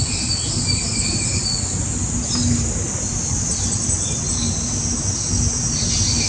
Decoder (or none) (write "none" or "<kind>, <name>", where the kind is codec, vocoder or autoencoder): none